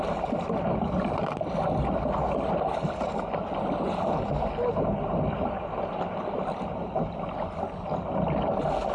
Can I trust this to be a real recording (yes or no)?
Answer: yes